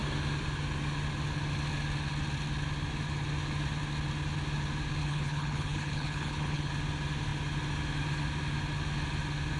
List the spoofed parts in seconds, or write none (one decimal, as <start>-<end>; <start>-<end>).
5.0-6.7